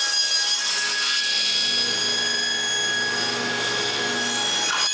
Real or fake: real